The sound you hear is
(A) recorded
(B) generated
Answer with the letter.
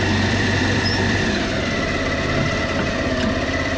B